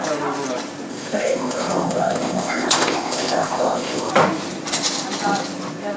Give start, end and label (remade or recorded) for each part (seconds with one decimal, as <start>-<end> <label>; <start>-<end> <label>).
0.0-0.9 recorded; 0.9-4.1 remade; 4.1-6.0 recorded

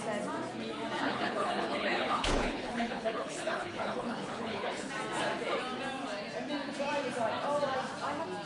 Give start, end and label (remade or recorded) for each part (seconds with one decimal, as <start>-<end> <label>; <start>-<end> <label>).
0.0-1.0 recorded; 1.0-4.9 remade; 4.9-8.5 recorded

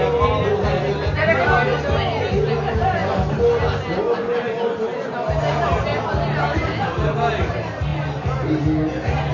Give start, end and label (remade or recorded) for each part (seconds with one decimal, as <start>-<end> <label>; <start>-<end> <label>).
0.0-9.3 recorded

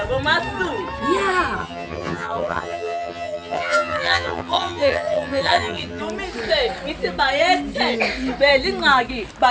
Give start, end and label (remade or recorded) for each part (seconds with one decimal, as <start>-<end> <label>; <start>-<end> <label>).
0.0-1.6 recorded; 1.6-6.0 remade; 6.0-9.5 recorded

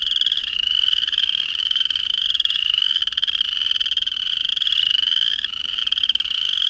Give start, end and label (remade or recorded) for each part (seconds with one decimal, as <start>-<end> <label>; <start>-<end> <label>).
0.0-3.0 remade; 3.0-4.5 recorded; 4.5-6.7 remade